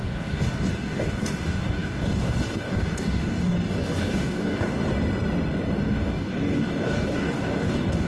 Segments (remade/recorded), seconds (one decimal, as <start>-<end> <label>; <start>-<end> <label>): 0.0-4.8 remade; 4.8-5.8 recorded; 5.8-8.1 remade